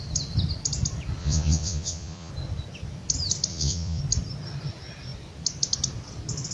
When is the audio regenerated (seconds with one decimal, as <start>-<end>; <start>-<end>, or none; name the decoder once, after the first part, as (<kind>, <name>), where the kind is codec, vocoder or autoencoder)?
1.2-2.3 (vocoder, Vocos); 3.5-4.0